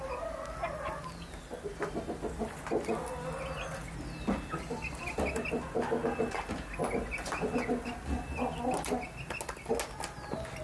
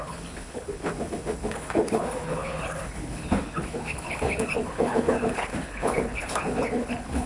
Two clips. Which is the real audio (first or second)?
first